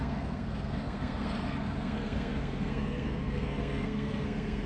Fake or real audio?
fake